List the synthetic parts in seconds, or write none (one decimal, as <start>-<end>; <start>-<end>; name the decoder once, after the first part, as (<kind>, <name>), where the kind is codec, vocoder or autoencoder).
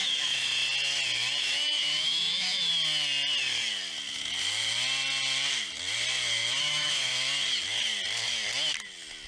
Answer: 0.0-0.5 (autoencoder, DAC-VAE); 1.4-2.7; 6.6-7.1